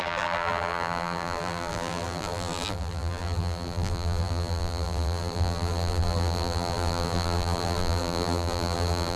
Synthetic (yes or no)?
yes